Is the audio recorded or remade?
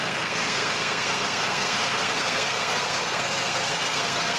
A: remade